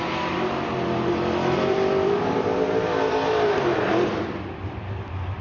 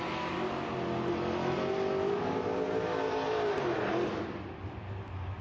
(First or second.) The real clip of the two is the second